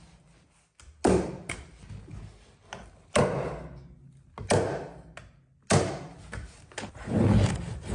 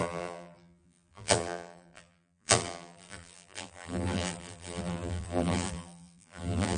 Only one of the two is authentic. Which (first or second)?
first